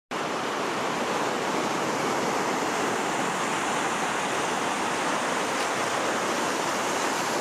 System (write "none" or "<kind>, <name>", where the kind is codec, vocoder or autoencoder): none